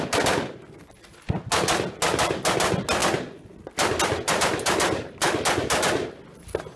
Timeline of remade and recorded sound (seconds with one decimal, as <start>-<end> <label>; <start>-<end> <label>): 0.0-6.8 recorded